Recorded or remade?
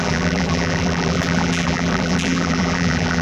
remade